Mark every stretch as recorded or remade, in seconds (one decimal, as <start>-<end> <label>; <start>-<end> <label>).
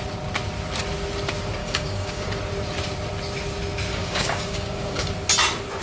0.0-1.6 recorded; 1.6-2.3 remade; 2.3-3.9 recorded; 3.9-5.1 remade; 5.1-5.8 recorded